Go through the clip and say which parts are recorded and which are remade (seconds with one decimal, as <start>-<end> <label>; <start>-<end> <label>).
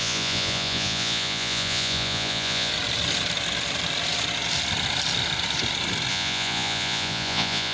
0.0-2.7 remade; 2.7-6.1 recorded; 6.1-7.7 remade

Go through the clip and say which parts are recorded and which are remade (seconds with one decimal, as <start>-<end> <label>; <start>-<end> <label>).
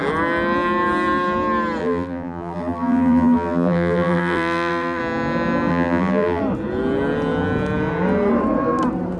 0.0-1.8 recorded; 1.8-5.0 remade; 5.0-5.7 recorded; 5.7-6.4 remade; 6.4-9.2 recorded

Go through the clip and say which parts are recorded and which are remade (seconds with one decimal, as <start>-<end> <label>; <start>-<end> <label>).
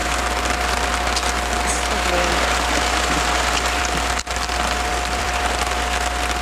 0.0-4.9 recorded; 4.9-5.4 remade; 5.4-6.4 recorded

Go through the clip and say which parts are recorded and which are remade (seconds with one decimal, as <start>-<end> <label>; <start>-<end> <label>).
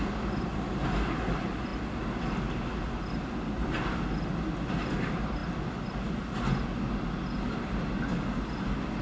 0.0-9.0 recorded